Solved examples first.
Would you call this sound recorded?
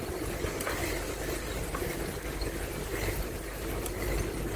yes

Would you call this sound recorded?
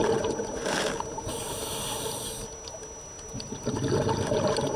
yes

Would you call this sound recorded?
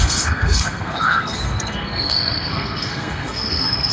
no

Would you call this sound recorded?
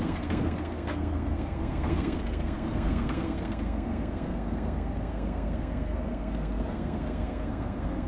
no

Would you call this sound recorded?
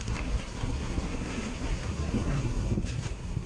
no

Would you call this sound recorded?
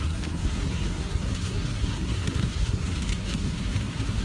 no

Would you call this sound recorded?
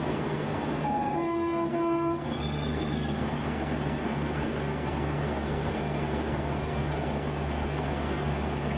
no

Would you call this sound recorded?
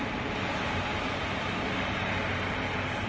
yes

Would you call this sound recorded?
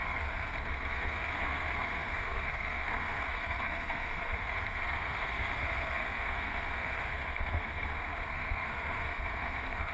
no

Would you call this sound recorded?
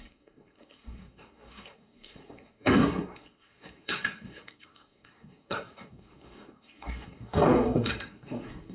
no